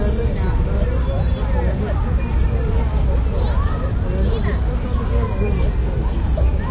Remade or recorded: recorded